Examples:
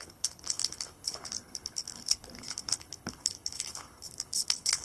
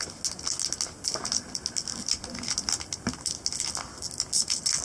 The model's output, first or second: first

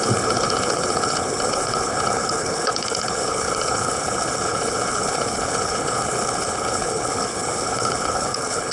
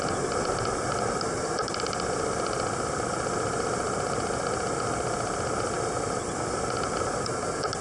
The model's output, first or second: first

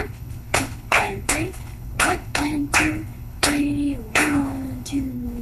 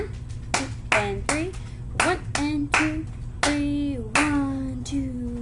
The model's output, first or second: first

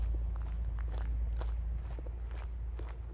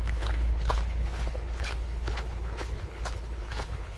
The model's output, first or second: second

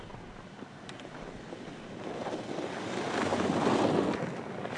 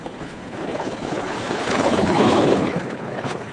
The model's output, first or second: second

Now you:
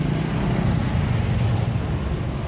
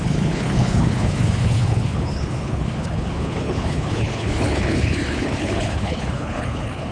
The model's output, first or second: second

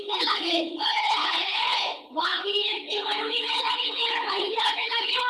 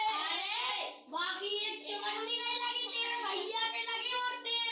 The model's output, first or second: first